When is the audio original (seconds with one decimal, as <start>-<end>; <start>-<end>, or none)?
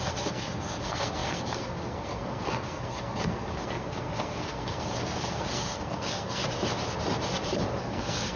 6.4-7.8